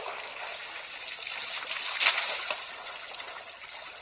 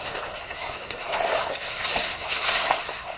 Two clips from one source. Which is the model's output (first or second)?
second